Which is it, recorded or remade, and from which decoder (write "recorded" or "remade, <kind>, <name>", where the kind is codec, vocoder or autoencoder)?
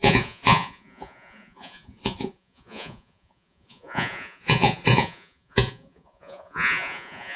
remade, vocoder, Vocos